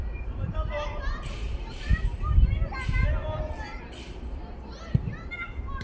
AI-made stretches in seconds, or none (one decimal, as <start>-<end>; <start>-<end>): 0.0-1.9